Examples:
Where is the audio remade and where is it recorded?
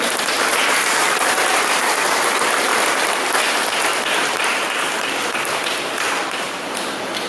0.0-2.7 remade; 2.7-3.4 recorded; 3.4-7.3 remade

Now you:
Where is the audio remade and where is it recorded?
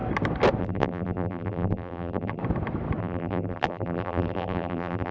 0.0-0.6 recorded; 0.6-2.4 remade; 2.4-3.0 recorded; 3.0-5.1 remade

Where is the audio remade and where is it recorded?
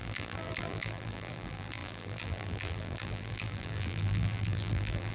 0.0-5.1 remade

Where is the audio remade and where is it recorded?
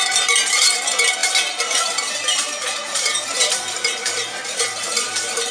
0.0-5.5 remade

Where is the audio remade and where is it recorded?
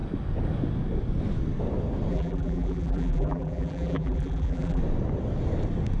0.0-2.1 recorded; 2.1-4.8 remade; 4.8-6.0 recorded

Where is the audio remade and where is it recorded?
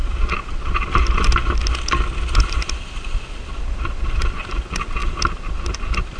0.0-2.4 recorded; 2.4-6.2 remade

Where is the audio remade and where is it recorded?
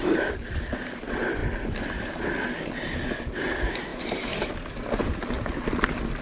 0.0-0.5 remade; 0.5-3.9 recorded; 3.9-4.5 remade; 4.5-6.2 recorded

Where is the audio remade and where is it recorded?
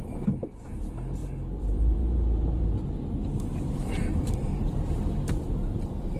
0.0-1.2 recorded; 1.2-2.7 remade; 2.7-3.5 recorded; 3.5-5.1 remade; 5.1-6.2 recorded